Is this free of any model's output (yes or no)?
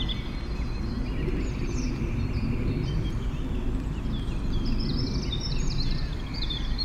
yes